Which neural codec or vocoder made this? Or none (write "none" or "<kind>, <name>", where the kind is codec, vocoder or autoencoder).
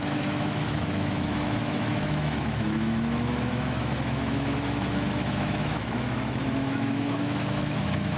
autoencoder, DAC-VAE